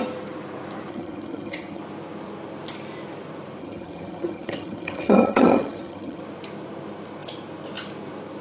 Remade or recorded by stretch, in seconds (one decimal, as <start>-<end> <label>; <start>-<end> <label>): 0.0-0.9 recorded; 0.9-1.8 remade; 1.8-3.6 recorded; 3.6-6.2 remade; 6.2-8.4 recorded

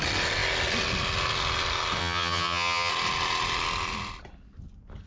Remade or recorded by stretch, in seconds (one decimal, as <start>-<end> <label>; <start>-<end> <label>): 0.0-2.0 recorded; 2.0-2.9 remade; 2.9-5.1 recorded

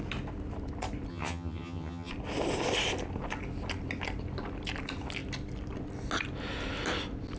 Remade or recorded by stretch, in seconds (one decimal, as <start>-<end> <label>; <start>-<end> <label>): 0.0-1.1 recorded; 1.1-2.1 remade; 2.1-7.4 recorded

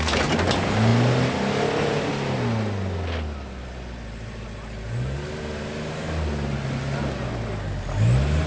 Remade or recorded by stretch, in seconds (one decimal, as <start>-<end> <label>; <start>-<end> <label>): 0.0-8.5 recorded

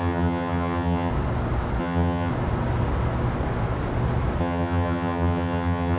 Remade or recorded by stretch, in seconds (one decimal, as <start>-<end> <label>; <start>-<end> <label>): 0.0-1.1 remade; 1.1-1.8 recorded; 1.8-2.3 remade; 2.3-4.4 recorded; 4.4-6.0 remade